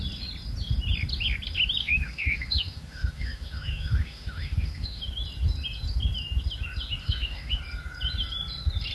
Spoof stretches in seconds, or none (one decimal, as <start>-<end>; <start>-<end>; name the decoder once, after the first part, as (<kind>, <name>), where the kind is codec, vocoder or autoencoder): 1.8-5.0 (autoencoder, DAC-VAE); 7.0-7.6